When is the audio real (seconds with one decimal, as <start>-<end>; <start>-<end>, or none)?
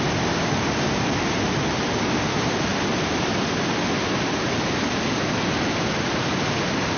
0.0-7.0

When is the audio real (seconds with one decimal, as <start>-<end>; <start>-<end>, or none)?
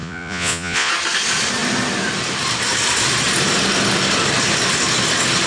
0.9-5.5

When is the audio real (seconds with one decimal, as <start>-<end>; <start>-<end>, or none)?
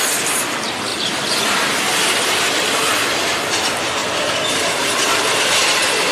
0.0-6.1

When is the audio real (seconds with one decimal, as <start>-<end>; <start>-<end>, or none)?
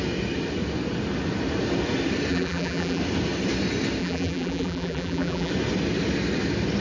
0.0-2.3; 3.0-4.0; 5.5-6.8